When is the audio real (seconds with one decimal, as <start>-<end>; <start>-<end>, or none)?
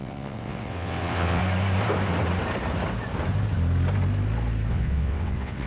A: 1.4-4.7